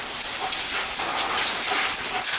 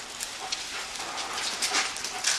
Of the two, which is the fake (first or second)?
first